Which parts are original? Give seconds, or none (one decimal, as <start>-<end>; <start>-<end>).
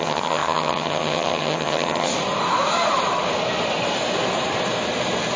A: 2.1-5.4